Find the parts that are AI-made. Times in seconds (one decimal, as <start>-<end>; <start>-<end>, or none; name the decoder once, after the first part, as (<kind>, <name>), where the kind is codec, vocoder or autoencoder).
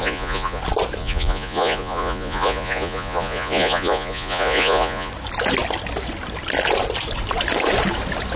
0.0-0.6 (vocoder, Vocos); 1.0-5.1